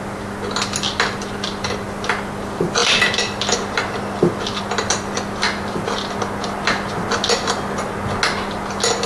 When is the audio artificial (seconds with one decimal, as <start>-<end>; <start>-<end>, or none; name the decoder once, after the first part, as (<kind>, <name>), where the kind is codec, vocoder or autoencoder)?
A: 2.8-4.6 (vocoder, BigVGAN v2)